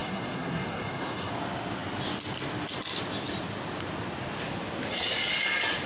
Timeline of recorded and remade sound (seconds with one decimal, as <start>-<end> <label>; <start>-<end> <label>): 0.0-1.3 remade; 1.3-5.9 recorded